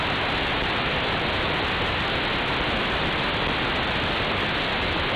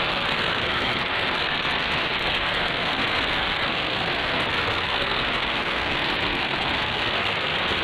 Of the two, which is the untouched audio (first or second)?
first